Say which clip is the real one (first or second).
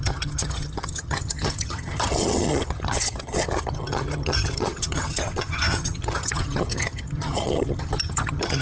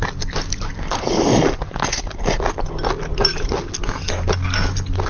second